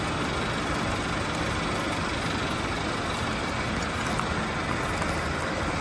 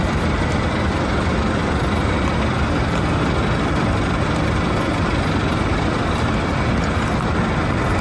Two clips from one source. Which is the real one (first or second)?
first